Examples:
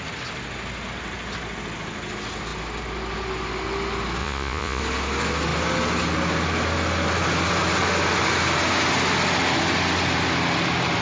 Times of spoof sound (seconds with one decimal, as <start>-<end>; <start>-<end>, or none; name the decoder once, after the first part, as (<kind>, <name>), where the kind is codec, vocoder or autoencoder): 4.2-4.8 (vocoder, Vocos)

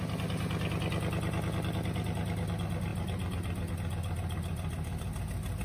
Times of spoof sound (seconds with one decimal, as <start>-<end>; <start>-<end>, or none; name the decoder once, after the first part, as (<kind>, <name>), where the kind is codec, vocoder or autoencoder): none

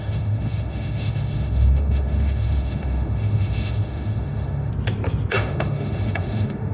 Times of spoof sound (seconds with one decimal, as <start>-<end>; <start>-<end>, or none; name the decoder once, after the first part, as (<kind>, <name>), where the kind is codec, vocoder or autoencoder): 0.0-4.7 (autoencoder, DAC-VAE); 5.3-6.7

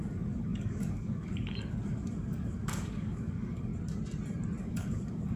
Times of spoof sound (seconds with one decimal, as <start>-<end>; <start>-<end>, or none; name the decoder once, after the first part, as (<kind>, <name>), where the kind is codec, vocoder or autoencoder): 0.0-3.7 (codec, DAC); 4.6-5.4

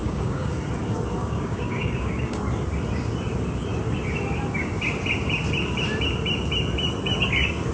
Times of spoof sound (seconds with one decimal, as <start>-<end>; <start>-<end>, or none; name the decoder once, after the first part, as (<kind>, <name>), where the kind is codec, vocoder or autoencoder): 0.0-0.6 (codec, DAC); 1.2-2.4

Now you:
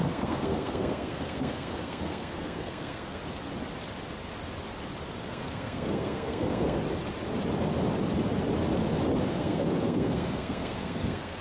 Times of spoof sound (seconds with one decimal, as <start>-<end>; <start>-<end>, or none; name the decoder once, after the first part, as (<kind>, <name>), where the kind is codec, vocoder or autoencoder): 0.0-3.2 (codec, SNAC); 5.2-6.8; 9.3-11.4